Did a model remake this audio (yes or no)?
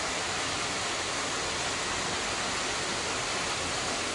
no